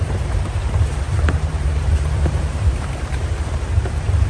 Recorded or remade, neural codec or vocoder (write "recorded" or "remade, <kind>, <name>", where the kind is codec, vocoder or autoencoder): remade, vocoder, BigVGAN v2